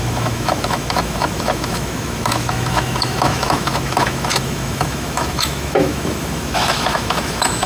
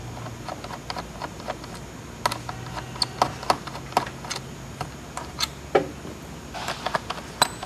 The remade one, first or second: first